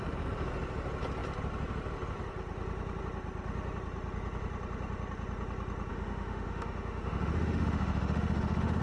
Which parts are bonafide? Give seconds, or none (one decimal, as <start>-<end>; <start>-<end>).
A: 0.0-5.9